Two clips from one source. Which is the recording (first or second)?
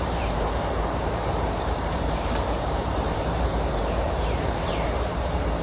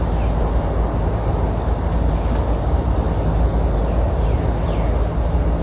second